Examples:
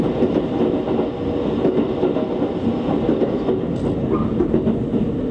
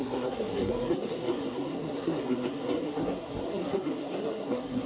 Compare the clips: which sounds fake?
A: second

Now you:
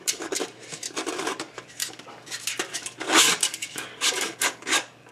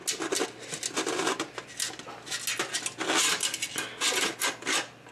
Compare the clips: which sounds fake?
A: first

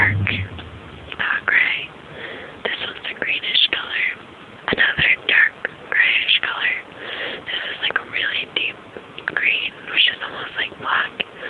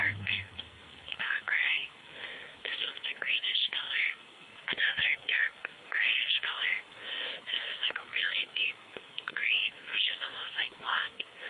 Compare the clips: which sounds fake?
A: second